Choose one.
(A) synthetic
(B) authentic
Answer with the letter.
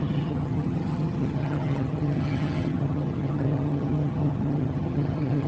A